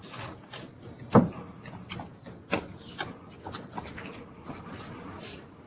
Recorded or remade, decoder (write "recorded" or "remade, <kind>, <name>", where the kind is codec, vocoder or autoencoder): recorded